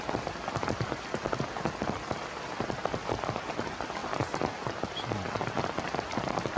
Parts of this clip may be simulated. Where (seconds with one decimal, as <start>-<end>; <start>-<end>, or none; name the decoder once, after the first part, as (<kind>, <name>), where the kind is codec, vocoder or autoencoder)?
none